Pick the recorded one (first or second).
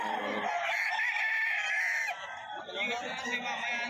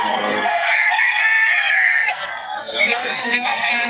first